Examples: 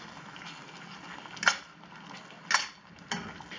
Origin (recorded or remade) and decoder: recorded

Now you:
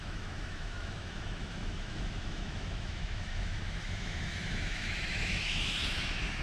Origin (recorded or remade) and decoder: remade, autoencoder, DAC-VAE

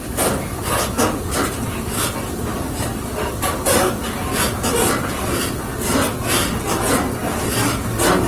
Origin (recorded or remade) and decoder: recorded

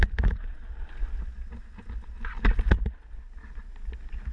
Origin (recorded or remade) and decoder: recorded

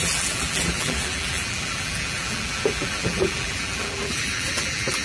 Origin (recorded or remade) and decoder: remade, vocoder, BigVGAN v2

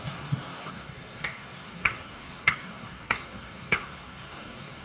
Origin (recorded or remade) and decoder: remade, codec, SNAC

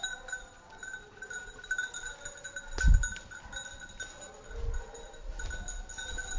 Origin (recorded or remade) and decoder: recorded